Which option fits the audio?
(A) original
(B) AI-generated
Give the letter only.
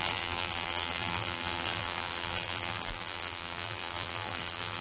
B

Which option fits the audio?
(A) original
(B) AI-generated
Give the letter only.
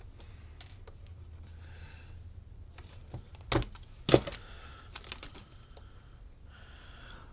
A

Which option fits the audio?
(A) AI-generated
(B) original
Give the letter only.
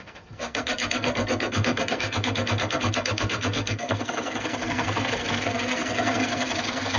A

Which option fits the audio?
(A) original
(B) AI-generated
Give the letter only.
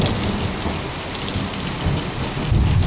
A